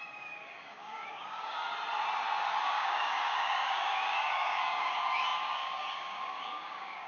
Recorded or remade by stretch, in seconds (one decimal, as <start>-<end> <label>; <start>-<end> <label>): 0.0-1.7 remade; 1.7-2.6 recorded; 2.6-7.1 remade